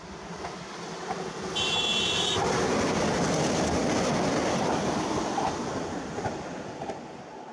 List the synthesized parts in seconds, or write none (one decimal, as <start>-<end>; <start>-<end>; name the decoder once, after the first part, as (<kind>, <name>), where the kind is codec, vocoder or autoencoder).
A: none